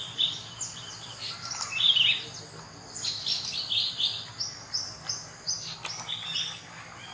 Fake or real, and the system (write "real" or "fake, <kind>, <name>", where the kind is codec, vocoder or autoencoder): real